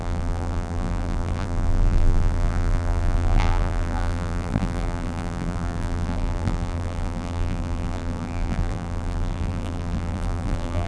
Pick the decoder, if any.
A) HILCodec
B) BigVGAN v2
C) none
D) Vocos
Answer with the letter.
B